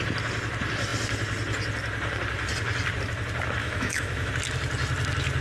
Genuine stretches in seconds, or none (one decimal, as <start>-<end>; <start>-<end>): 0.0-3.6; 4.3-5.4